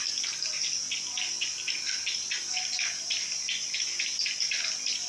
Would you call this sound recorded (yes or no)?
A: yes